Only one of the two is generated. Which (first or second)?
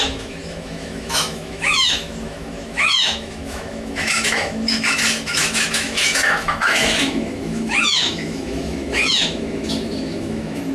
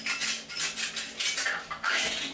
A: first